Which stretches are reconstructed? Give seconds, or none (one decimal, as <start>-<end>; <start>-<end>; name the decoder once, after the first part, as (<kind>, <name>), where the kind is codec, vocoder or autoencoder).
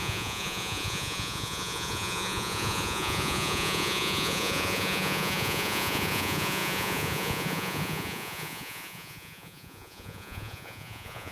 0.0-11.3 (vocoder, Vocos)